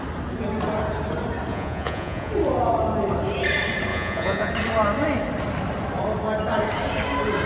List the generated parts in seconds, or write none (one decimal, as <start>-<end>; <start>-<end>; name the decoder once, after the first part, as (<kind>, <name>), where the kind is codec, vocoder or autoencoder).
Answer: 1.5-2.3 (vocoder, Vocos); 3.9-4.5